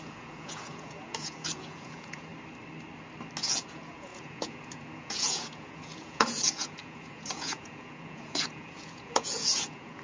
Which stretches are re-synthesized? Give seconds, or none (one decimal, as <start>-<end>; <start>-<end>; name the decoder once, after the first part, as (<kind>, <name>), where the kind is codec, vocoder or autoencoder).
0.0-2.3 (vocoder, Vocos); 3.4-10.0